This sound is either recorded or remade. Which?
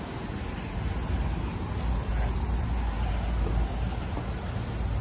recorded